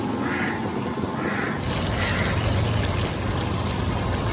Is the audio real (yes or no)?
yes